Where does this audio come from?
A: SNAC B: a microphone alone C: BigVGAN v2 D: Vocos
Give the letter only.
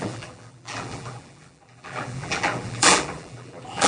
C